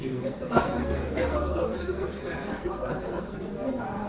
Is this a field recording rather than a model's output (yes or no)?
no